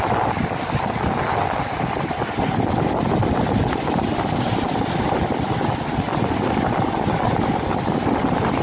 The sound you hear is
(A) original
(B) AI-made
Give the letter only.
A